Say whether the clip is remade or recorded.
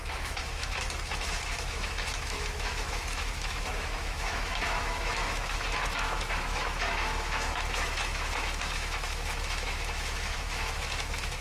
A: remade